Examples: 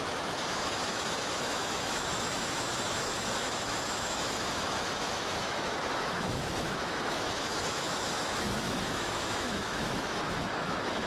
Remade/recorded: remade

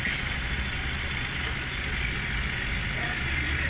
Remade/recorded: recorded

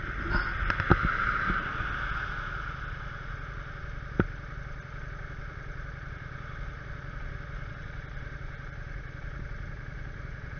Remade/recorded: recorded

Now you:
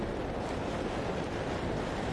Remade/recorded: recorded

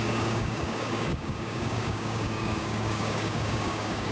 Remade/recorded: remade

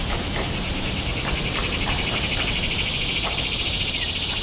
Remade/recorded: remade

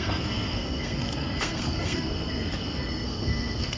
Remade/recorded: remade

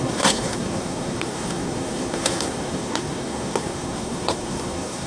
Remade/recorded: remade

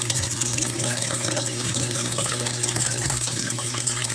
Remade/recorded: remade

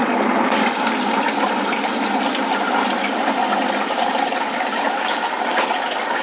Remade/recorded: recorded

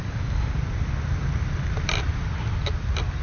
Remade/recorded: recorded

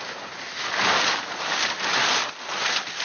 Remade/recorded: recorded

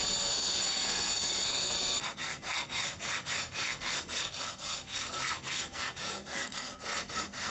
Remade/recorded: remade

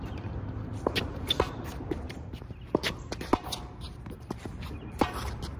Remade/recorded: remade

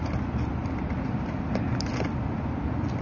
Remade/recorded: recorded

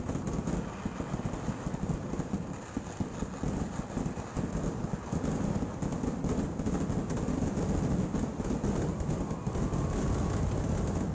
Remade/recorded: recorded